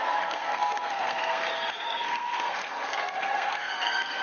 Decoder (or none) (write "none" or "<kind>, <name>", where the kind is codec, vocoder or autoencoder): codec, SNAC